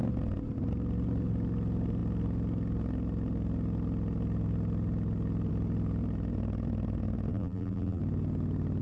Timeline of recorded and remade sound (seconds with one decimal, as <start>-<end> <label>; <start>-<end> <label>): 0.0-7.3 recorded; 7.3-8.0 remade; 8.0-8.8 recorded